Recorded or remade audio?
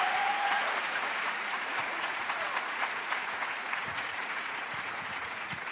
remade